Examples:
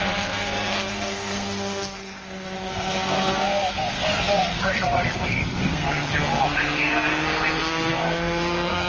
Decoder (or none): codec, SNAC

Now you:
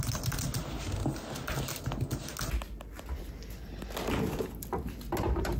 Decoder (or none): none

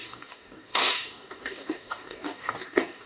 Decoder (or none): codec, DAC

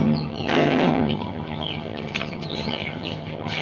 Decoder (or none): vocoder, HiFi-GAN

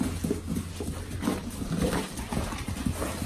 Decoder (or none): none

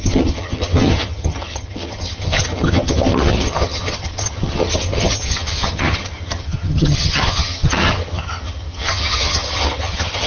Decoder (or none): vocoder, HiFi-GAN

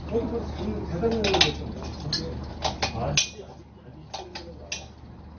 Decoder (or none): none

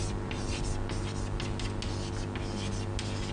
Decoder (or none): none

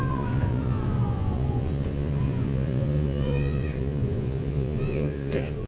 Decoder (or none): vocoder, Vocos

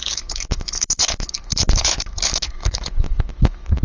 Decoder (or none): autoencoder, DAC-VAE